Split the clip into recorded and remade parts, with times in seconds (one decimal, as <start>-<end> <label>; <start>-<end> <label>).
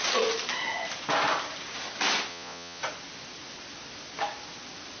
0.0-2.3 recorded; 2.3-2.8 remade; 2.8-5.0 recorded